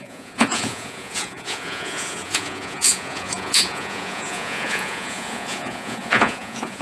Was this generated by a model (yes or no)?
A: yes